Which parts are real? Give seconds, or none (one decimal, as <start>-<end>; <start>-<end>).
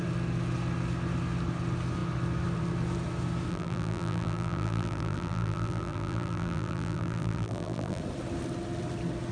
0.0-3.5; 8.0-9.3